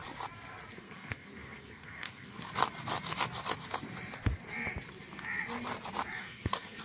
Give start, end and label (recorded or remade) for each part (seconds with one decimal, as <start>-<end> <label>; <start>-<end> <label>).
0.0-0.8 recorded; 0.8-2.5 remade; 2.5-6.2 recorded; 6.2-6.8 remade